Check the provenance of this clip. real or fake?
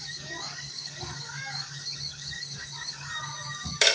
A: fake